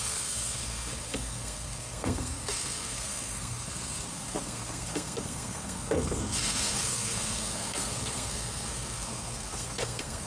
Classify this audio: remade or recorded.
remade